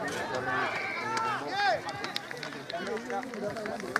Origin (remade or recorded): recorded